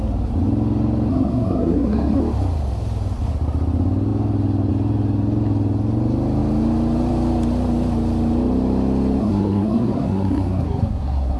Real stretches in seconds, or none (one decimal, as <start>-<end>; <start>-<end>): 0.0-1.1; 2.2-9.2